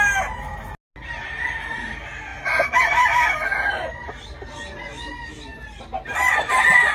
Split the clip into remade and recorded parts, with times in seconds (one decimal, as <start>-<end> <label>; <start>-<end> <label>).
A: 0.0-1.2 recorded; 1.2-1.8 remade; 1.8-6.9 recorded